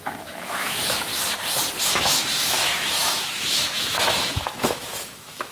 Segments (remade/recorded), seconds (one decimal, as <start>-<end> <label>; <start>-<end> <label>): 0.0-1.1 remade; 1.1-1.8 recorded; 1.8-5.5 remade